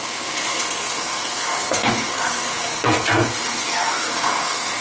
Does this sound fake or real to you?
fake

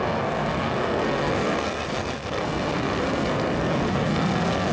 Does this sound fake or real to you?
fake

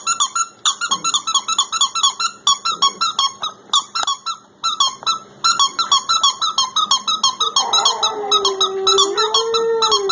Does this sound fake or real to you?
real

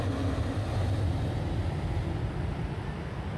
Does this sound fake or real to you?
real